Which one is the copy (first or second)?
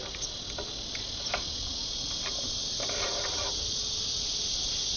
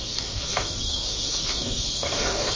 second